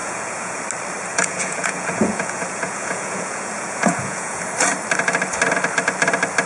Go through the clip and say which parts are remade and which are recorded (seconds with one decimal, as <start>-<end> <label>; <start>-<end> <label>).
0.0-0.6 remade; 0.6-1.1 recorded; 1.1-4.5 remade; 4.5-6.5 recorded